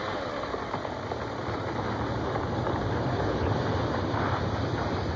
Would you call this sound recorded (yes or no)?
no